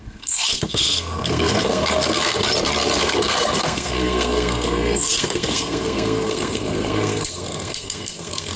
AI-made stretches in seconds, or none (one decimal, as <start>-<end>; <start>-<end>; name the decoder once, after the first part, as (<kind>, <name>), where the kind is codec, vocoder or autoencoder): 0.0-2.4 (codec, SNAC); 3.0-8.6